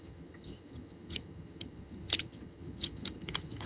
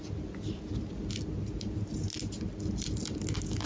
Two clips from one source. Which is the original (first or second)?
second